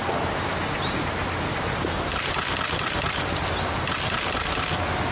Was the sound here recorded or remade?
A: recorded